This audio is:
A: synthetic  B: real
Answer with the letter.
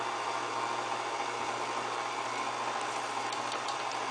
B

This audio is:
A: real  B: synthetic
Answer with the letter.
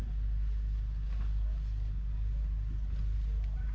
A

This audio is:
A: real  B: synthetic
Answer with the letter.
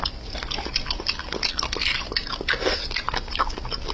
A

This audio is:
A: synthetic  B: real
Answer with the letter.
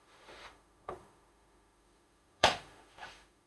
A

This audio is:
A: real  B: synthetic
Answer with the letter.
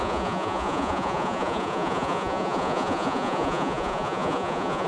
B